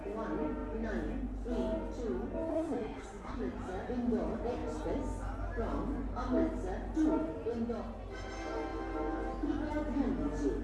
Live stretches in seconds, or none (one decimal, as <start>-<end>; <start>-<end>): 0.0-2.5; 3.4-10.6